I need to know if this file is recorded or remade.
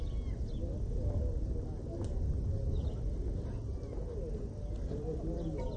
recorded